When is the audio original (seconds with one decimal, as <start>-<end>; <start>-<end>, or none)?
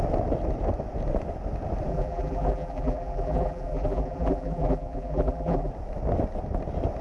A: 0.0-1.9; 5.7-7.0